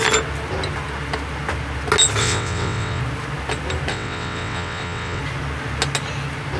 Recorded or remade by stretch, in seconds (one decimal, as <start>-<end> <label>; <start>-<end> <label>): 0.0-2.2 recorded; 2.2-3.0 remade; 3.0-3.9 recorded; 3.9-5.2 remade; 5.2-6.6 recorded